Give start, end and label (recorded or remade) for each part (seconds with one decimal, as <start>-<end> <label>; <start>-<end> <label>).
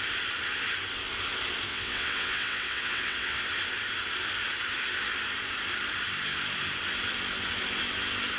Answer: 0.0-1.7 recorded; 1.7-3.4 remade; 3.4-8.4 recorded